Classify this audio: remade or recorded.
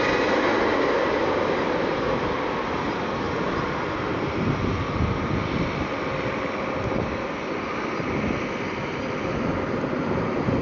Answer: recorded